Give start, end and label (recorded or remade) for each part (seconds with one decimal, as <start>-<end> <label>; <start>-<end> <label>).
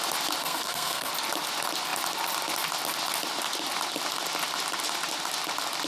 0.0-0.4 recorded; 0.4-1.1 remade; 1.1-5.9 recorded